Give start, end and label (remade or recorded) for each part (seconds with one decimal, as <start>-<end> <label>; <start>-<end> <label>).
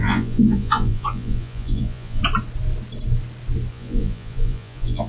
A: 0.0-2.2 remade; 2.2-3.7 recorded; 3.7-5.1 remade